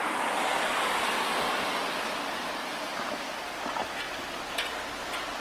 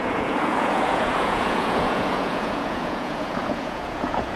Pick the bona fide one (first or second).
first